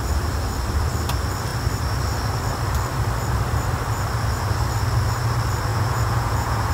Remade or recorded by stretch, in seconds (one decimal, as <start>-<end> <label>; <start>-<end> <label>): 0.0-5.7 recorded; 5.7-6.7 remade